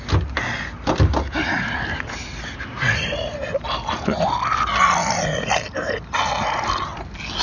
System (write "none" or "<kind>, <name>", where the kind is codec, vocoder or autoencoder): none